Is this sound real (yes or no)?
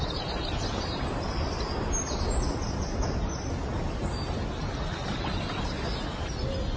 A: yes